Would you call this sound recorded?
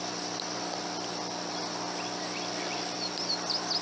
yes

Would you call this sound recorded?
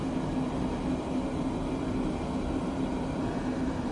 yes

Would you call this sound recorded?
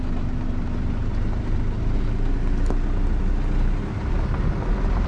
yes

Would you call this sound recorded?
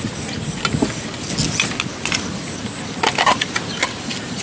yes